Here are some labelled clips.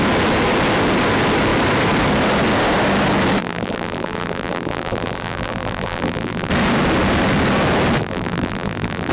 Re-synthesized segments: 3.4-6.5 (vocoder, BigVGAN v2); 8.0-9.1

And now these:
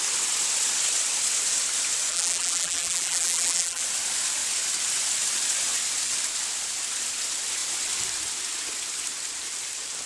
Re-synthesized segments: 2.1-3.8 (vocoder, BigVGAN v2)

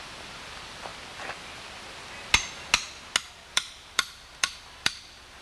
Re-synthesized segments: 0.0-0.9 (vocoder, BigVGAN v2); 3.5-5.4

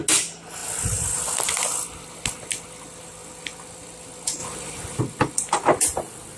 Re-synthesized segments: 4.4-5.0 (vocoder, BigVGAN v2)